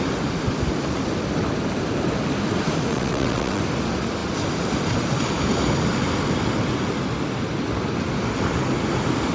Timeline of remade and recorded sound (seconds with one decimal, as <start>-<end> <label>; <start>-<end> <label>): 0.0-2.9 recorded; 2.9-3.6 remade; 3.6-9.3 recorded